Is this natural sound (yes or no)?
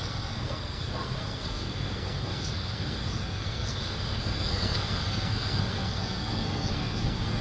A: no